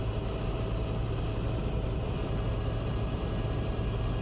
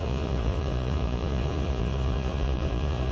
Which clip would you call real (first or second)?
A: first